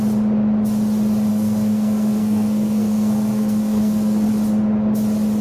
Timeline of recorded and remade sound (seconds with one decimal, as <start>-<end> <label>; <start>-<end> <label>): 0.0-1.3 recorded; 1.3-4.3 remade; 4.3-5.4 recorded

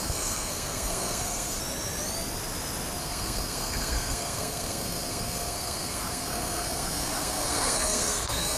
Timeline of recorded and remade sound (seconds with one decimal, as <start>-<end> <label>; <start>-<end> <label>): 0.0-1.6 remade; 1.6-3.0 recorded; 3.0-8.6 remade

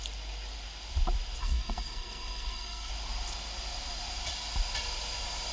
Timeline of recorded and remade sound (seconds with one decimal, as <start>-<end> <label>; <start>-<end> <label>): 0.0-1.4 recorded; 1.4-2.9 remade; 2.9-5.5 recorded

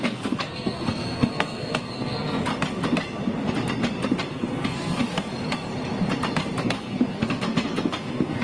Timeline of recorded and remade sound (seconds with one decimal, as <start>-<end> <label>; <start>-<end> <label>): 0.0-2.5 remade; 2.5-4.3 recorded; 4.3-5.0 remade; 5.0-6.6 recorded; 6.6-8.4 remade

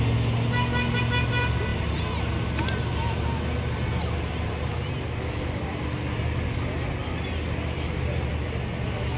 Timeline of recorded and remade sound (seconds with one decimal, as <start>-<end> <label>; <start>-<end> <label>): 0.0-9.2 recorded

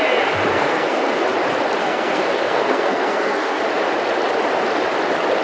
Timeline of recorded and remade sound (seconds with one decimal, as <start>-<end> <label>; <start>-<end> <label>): 0.0-0.5 recorded; 0.5-1.1 remade; 1.1-1.8 recorded; 1.8-3.6 remade; 3.6-5.4 recorded

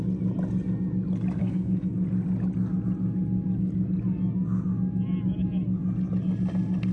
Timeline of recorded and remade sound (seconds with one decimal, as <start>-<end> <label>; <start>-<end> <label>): 0.0-1.4 recorded; 1.4-1.9 remade; 1.9-6.9 recorded

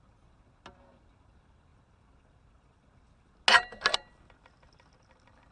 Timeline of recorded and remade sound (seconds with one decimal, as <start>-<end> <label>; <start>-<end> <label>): 0.0-5.5 recorded